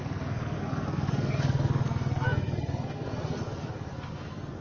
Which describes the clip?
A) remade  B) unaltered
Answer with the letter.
A